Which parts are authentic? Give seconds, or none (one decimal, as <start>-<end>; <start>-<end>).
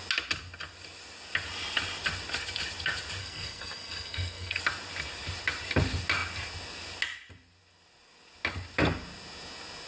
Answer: 0.0-3.2; 4.6-9.9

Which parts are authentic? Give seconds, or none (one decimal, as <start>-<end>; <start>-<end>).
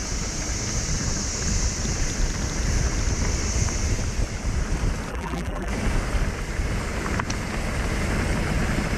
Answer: 0.0-5.1; 5.7-9.0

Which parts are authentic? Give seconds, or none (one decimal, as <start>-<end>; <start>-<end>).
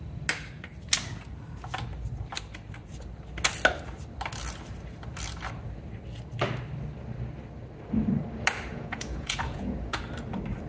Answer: 0.0-8.7; 10.0-10.7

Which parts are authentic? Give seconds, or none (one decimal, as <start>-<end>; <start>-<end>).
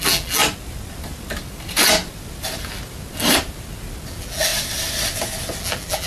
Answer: 0.4-4.1; 4.5-5.6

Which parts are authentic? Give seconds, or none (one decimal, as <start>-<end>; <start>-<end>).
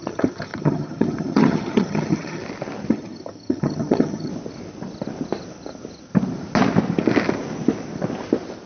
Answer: 2.4-2.9; 4.3-8.7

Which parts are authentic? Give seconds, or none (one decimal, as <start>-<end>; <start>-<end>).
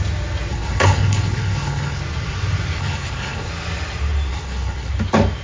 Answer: 0.0-0.5; 2.0-2.8; 3.5-4.3; 4.9-5.4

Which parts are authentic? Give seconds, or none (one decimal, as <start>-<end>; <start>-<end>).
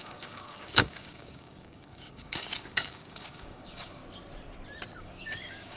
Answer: 4.0-5.0